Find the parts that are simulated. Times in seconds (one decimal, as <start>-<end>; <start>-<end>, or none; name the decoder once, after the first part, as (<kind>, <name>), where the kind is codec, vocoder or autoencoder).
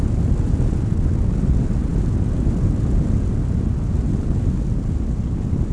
none